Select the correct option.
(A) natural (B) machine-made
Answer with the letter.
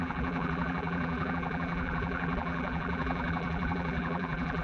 B